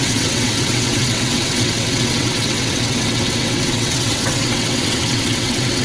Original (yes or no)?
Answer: no